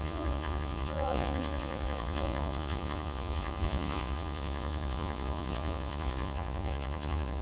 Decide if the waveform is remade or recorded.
remade